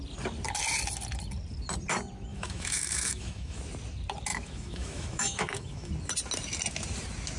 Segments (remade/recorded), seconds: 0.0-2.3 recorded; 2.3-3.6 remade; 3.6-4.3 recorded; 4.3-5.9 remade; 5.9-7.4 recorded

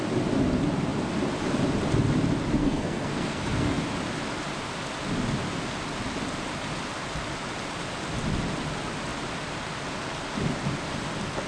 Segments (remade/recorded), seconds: 0.0-2.6 recorded; 2.6-3.8 remade; 3.8-11.5 recorded

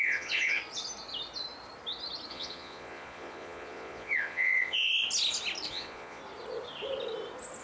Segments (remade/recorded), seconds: 0.0-0.6 remade; 0.6-2.3 recorded; 2.3-4.9 remade; 4.9-5.7 recorded; 5.7-6.2 remade; 6.2-7.6 recorded

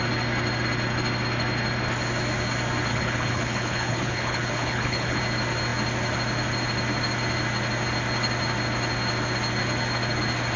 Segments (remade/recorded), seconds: 0.0-2.9 recorded; 2.9-5.2 remade; 5.2-10.6 recorded

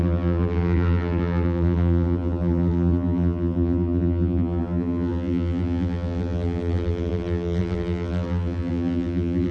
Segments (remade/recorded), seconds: 0.0-9.5 remade

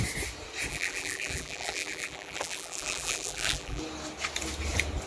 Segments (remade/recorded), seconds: 0.0-0.7 recorded; 0.7-3.8 remade; 3.8-5.1 recorded

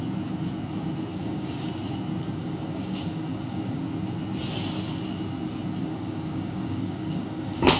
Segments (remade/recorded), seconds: 0.0-1.1 recorded; 1.1-1.7 remade; 1.7-2.4 recorded; 2.4-3.8 remade; 3.8-5.8 recorded; 5.8-7.8 remade